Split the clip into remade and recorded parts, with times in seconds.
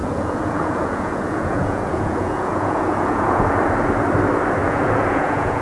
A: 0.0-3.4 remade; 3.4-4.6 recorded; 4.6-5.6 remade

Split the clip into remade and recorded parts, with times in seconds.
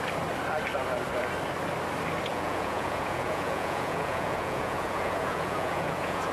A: 0.0-2.3 recorded; 2.3-6.3 remade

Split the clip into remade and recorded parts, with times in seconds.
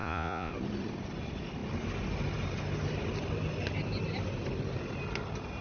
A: 0.0-0.5 remade; 0.5-5.6 recorded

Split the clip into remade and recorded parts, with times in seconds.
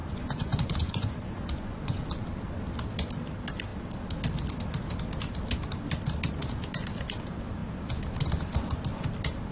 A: 0.0-2.0 remade; 2.0-9.5 recorded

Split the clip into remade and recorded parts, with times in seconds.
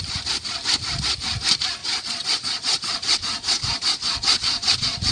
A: 0.0-1.8 recorded; 1.8-5.1 remade